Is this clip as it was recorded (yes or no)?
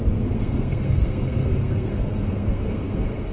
no